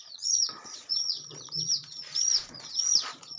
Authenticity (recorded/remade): remade